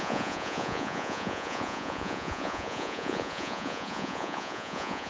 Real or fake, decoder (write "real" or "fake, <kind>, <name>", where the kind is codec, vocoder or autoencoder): fake, vocoder, Vocos